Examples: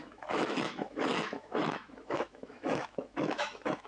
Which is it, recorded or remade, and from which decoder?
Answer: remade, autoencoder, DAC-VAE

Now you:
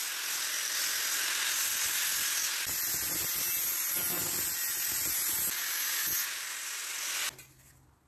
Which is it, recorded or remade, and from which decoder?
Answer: recorded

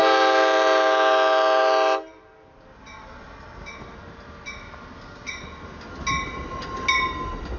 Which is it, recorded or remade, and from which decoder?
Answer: recorded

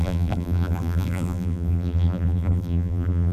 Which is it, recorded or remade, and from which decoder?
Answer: remade, vocoder, BigVGAN v2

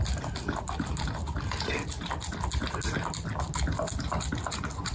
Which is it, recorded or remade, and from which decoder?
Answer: recorded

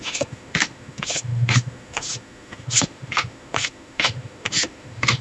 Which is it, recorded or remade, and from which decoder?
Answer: remade, autoencoder, DAC-VAE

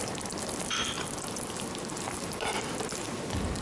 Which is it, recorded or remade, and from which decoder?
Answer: recorded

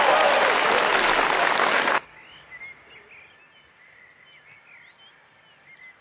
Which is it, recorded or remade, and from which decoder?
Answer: recorded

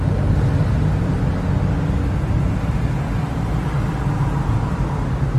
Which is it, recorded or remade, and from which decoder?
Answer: recorded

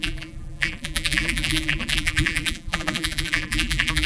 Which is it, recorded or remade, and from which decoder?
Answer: remade, vocoder, BigVGAN v2